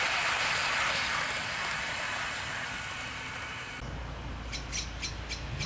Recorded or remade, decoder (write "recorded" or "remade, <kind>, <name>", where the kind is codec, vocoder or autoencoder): recorded